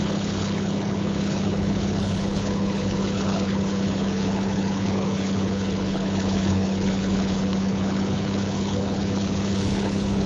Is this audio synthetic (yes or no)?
yes